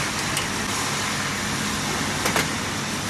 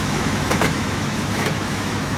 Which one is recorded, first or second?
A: first